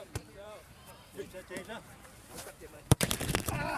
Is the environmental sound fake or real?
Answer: fake